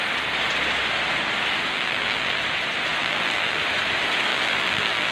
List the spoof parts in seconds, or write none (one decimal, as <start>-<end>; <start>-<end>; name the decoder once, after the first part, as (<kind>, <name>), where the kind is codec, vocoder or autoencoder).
1.7-2.4 (vocoder, BigVGAN v2); 3.0-3.6; 4.3-5.1